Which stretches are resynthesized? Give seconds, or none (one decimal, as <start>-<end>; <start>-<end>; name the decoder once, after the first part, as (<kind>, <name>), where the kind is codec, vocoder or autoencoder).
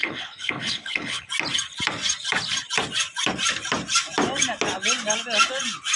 0.0-1.3 (codec, HILCodec)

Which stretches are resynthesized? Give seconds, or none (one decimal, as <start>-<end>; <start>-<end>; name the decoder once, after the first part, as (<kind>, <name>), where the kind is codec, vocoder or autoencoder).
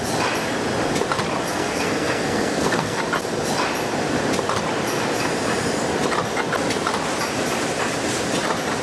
1.5-3.0 (codec, SNAC)